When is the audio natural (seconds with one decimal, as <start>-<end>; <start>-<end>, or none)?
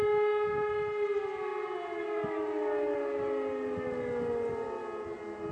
0.0-5.5